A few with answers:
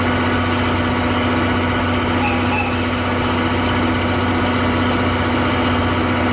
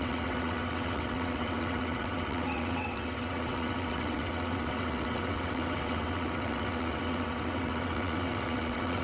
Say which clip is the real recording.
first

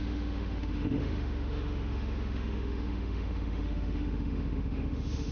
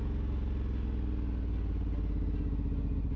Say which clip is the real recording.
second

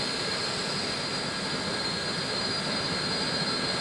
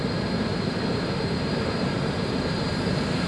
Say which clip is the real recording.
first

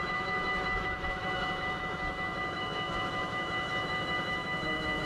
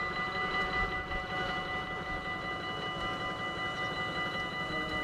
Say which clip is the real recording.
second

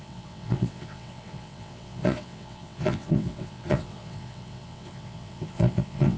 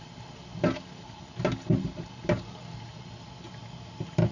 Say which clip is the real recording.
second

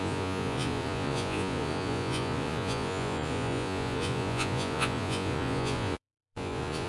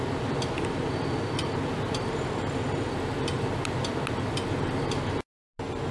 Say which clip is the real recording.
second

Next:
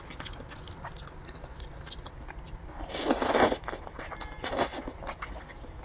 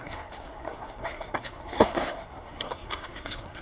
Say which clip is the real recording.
first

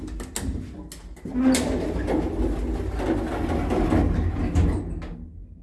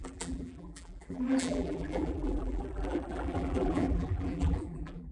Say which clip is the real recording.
first